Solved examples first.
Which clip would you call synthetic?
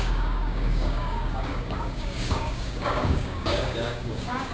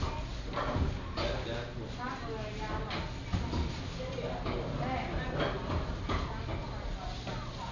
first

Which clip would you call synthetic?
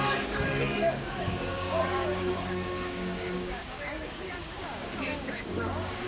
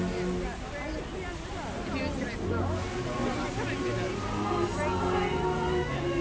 first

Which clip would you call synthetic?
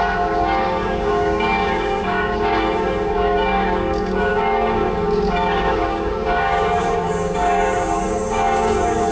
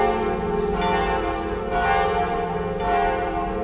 first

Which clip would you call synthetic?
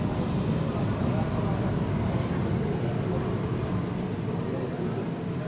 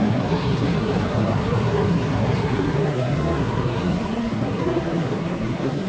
second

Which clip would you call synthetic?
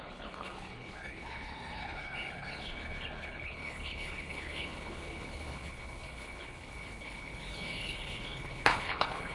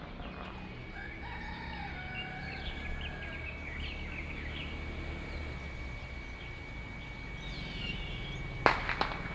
first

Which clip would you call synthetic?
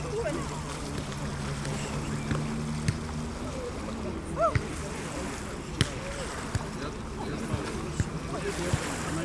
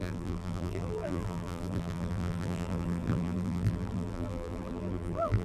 second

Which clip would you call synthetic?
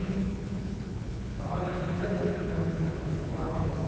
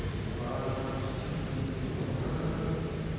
first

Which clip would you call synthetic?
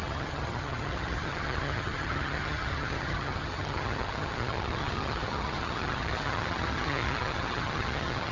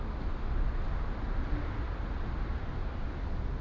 first